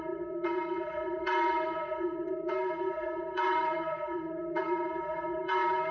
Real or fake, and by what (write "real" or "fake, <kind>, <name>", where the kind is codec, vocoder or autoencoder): fake, vocoder, WaveNeXt